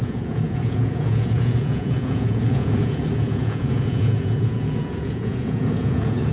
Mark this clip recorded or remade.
remade